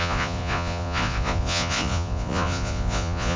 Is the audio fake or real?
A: fake